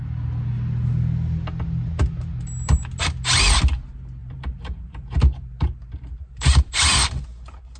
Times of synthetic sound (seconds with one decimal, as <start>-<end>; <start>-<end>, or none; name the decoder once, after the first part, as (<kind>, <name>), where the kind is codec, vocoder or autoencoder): 4.2-7.8 (vocoder, BigVGAN v2)